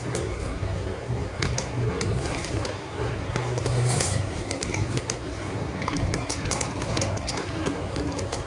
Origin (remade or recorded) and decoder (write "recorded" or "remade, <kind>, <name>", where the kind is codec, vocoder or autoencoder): remade, codec, SNAC